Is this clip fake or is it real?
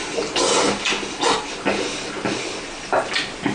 real